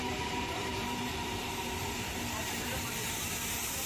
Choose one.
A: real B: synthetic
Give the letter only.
B